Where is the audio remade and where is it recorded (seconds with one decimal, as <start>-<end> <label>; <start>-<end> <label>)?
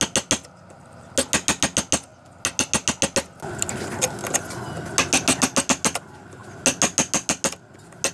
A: 0.0-8.1 recorded